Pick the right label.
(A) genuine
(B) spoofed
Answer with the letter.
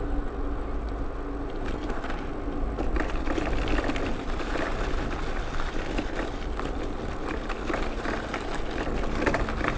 A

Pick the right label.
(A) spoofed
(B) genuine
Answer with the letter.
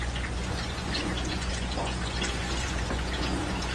A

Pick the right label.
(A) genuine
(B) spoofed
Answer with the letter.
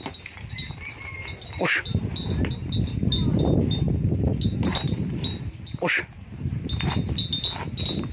A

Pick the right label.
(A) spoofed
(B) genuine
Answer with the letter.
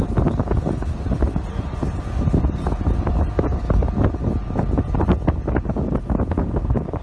B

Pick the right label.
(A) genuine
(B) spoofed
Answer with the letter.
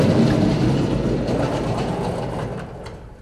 A